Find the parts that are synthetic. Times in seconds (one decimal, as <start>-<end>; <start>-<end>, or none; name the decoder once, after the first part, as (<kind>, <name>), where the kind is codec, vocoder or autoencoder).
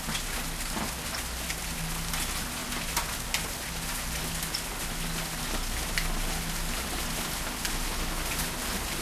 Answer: none